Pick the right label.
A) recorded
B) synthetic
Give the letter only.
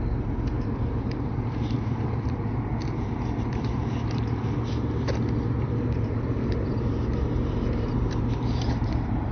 B